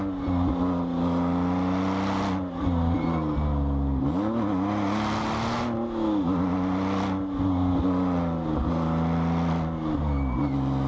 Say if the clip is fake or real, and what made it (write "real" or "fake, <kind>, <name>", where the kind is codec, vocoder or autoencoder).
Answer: real